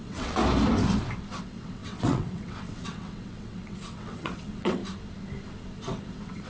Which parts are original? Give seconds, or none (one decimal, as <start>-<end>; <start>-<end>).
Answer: 0.4-1.4; 4.8-5.8